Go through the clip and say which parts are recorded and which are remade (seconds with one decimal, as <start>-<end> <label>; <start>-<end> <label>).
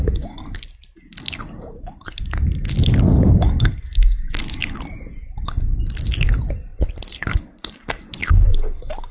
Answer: 0.0-6.7 recorded; 6.7-7.7 remade; 7.7-9.1 recorded